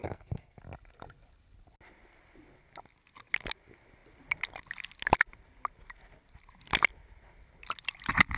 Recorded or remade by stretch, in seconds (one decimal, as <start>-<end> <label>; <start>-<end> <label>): 0.0-0.6 remade; 0.6-8.4 recorded